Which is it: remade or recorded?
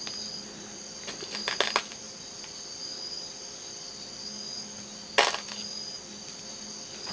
recorded